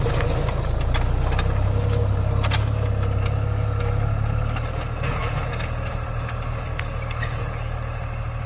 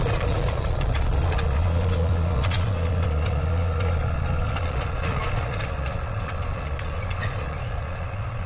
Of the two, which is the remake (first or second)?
second